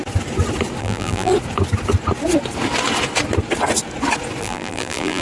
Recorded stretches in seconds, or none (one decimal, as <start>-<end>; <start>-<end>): 0.0-0.8; 1.3-4.4